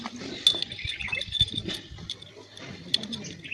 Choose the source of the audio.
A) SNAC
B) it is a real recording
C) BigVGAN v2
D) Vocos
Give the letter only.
B